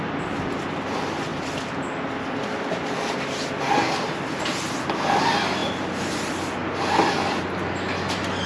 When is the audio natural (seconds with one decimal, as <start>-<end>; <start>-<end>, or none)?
0.0-8.5